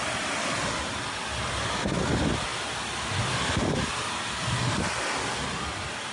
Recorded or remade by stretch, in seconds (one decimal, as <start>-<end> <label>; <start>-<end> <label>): 0.0-6.1 recorded